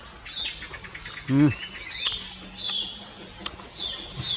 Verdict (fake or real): real